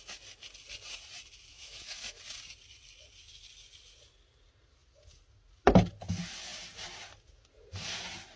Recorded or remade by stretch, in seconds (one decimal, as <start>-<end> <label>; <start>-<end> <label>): 0.0-1.5 recorded; 1.5-2.2 remade; 2.2-8.4 recorded